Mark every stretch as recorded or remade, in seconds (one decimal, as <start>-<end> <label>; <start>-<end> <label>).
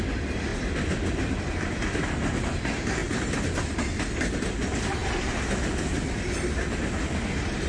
0.0-7.7 recorded